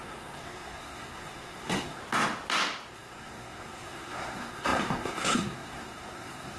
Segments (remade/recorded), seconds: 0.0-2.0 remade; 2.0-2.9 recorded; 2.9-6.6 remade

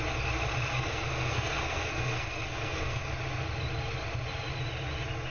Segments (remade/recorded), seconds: 0.0-0.7 recorded; 0.7-3.0 remade; 3.0-5.3 recorded

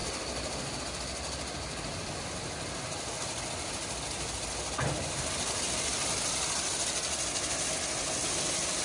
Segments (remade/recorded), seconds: 0.0-8.8 recorded